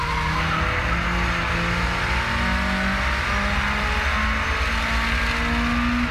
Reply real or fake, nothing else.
real